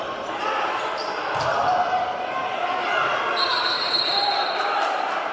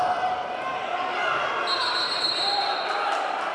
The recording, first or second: second